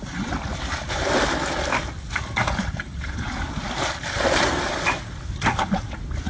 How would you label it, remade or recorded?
recorded